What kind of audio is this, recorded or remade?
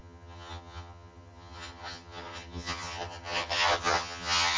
remade